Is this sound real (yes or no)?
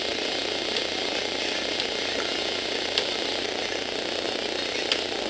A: yes